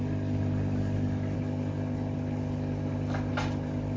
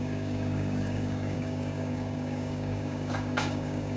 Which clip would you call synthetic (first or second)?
second